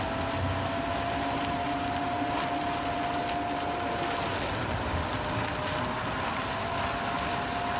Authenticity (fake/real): real